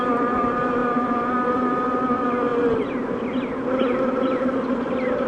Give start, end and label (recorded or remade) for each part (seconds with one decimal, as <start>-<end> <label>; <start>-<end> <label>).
0.0-2.5 remade; 2.5-4.2 recorded; 4.2-5.3 remade